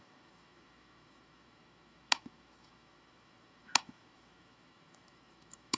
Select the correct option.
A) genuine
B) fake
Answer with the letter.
B